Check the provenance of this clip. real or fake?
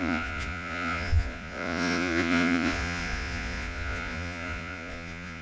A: fake